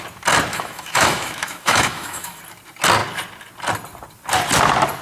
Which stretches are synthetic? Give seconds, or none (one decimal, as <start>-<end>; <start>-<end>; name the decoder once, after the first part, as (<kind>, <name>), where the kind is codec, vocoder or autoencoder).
0.5-2.4 (autoencoder, DAC-VAE)